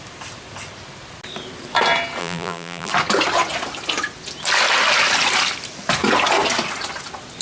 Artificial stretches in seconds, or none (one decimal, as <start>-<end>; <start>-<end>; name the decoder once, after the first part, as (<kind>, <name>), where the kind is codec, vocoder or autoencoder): 2.2-2.9 (vocoder, BigVGAN v2)